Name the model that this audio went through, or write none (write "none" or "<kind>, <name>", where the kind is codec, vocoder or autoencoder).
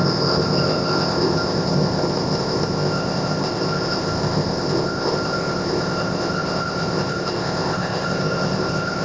codec, ZipCodec